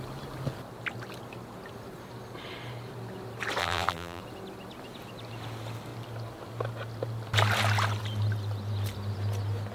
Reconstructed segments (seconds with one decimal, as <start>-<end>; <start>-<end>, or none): 3.6-4.2